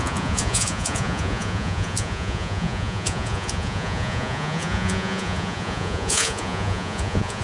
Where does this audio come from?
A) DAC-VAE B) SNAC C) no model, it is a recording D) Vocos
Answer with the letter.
D